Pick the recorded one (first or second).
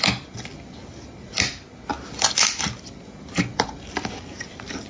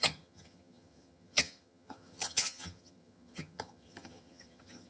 first